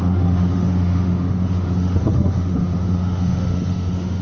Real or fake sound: fake